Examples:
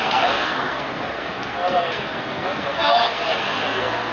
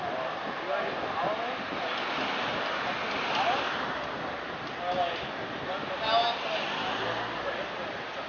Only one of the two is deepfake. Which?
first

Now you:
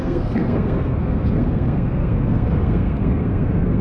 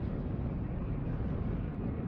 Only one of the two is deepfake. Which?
first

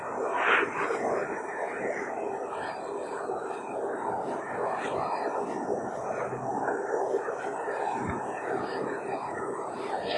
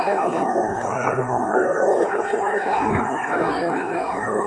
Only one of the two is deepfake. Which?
second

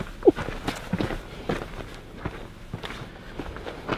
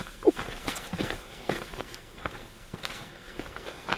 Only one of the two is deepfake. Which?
second